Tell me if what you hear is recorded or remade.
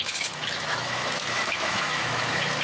remade